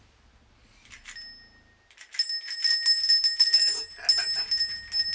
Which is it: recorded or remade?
recorded